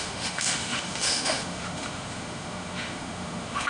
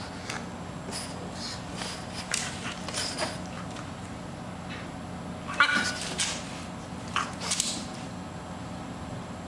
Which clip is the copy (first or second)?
first